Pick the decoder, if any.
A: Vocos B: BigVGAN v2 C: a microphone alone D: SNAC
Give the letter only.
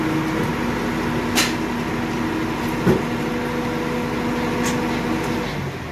C